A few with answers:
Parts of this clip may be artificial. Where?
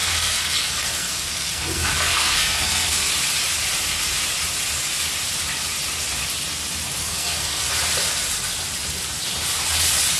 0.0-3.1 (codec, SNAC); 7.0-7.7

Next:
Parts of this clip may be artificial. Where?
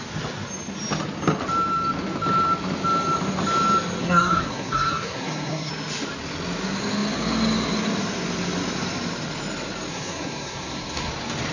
4.0-5.7 (codec, SNAC); 9.9-11.1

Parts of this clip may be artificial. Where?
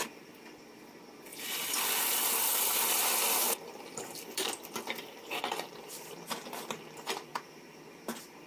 1.3-5.4 (vocoder, BigVGAN v2)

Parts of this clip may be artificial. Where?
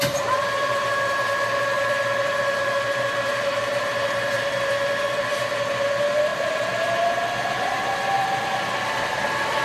0.4-4.7 (vocoder, BigVGAN v2); 6.3-6.8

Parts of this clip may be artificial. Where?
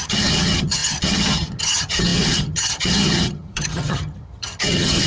0.0-5.1 (vocoder, HiFi-GAN)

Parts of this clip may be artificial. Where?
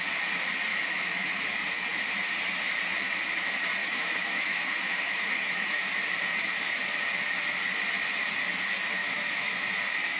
0.7-1.4 (autoencoder, DAC-VAE); 3.8-5.9; 9.0-9.5